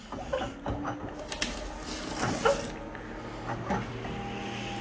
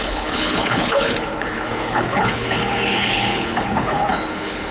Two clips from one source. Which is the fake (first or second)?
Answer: second